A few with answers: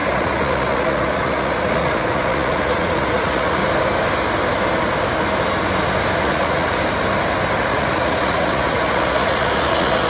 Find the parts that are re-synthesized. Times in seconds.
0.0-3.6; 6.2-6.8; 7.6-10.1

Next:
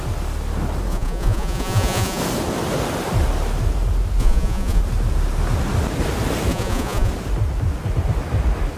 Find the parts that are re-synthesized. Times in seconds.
0.9-2.2; 4.2-4.8; 6.5-7.1

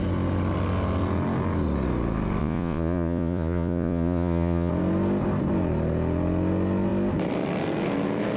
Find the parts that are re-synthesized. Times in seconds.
2.4-4.7